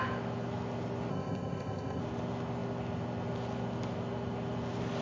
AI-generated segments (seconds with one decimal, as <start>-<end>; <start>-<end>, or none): 1.1-2.0